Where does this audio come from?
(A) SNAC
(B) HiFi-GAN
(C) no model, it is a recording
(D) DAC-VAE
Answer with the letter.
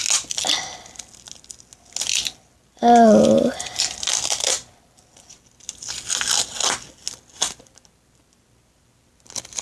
C